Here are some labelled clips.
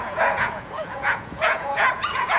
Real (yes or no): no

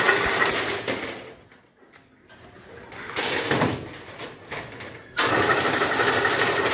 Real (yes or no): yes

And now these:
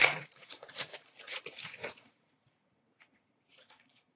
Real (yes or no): no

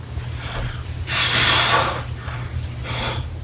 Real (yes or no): yes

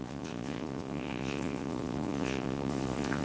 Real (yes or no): no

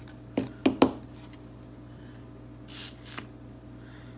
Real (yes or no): yes